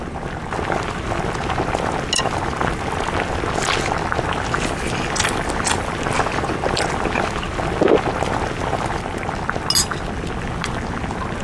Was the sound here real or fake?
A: real